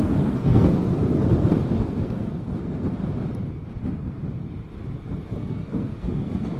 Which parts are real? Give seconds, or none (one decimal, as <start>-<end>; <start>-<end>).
3.0-3.8; 4.2-5.3